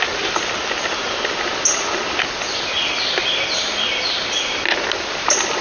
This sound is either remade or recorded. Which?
recorded